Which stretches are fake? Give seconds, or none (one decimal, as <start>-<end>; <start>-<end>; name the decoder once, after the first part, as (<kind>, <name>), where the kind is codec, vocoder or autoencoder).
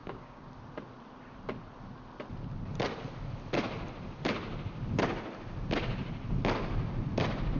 0.0-0.5 (codec, DAC)